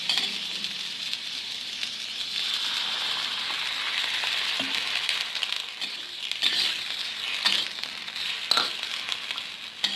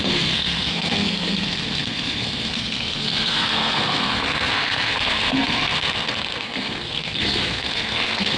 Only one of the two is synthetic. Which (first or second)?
second